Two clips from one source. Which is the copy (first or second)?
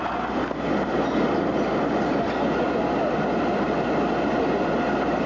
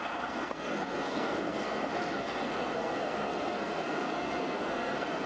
second